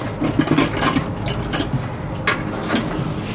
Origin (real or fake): real